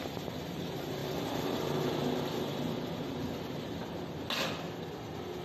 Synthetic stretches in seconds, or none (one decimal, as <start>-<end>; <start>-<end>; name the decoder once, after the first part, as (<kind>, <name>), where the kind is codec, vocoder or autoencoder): none